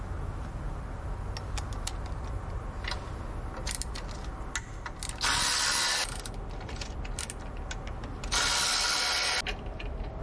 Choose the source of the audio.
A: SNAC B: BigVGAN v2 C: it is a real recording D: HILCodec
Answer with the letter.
C